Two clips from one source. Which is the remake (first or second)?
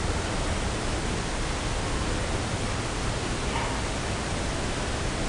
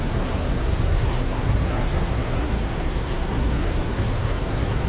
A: second